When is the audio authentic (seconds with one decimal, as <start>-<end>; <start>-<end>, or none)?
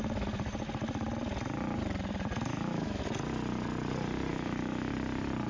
0.0-2.5; 3.0-4.3; 4.9-5.5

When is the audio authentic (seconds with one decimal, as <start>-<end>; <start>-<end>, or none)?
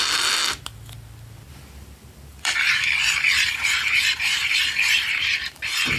0.0-2.3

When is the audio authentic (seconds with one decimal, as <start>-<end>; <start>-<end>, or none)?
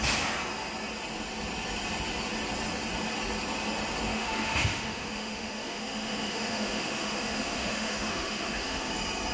0.0-4.1; 8.9-9.3